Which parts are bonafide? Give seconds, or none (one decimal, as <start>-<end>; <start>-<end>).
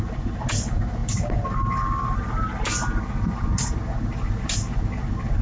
0.0-5.4